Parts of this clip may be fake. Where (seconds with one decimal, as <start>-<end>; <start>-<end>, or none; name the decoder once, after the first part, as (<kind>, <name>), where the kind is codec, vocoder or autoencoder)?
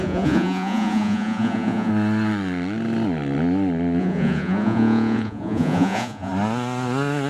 0.0-1.9 (vocoder, Vocos); 4.0-6.3